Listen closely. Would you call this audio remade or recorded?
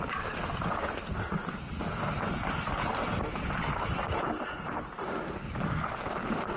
recorded